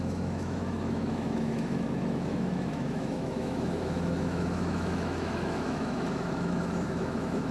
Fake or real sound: fake